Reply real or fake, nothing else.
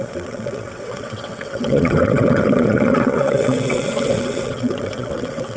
fake